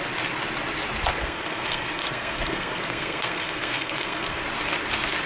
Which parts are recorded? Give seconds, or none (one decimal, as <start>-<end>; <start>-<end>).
0.0-1.2; 4.4-5.3